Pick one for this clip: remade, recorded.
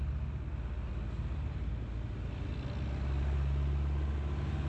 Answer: recorded